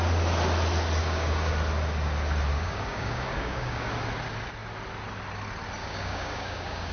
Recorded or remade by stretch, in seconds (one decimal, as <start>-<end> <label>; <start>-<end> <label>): 0.0-1.0 recorded; 1.0-1.5 remade; 1.5-2.5 recorded; 2.5-3.9 remade; 3.9-5.8 recorded; 5.8-6.9 remade

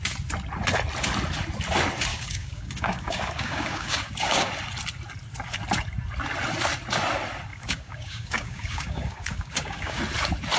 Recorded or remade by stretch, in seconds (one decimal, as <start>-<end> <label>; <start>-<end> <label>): 0.0-2.1 recorded; 2.1-4.5 remade; 4.5-7.5 recorded; 7.5-10.0 remade; 10.0-10.6 recorded

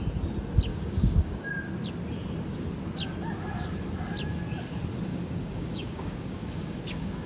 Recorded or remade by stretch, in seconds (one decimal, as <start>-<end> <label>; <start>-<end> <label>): 0.0-0.7 recorded; 0.7-1.5 remade; 1.5-5.1 recorded; 5.1-7.3 remade

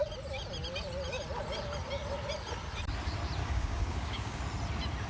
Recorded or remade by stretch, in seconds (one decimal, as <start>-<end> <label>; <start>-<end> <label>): 0.0-3.4 recorded; 3.4-4.4 remade; 4.4-5.1 recorded

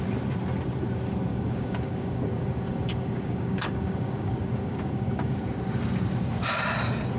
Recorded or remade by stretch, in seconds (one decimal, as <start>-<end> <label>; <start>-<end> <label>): 0.0-1.3 recorded; 1.3-5.3 remade; 5.3-7.2 recorded